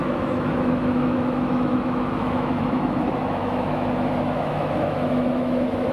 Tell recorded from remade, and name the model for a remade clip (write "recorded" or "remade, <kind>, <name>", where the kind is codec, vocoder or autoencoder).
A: remade, autoencoder, DAC-VAE